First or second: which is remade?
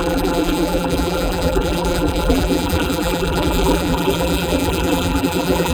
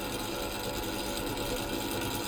first